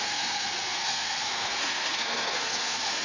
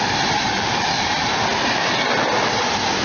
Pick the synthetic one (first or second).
first